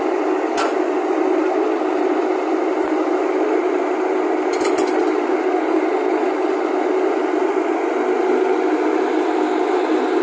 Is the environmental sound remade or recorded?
recorded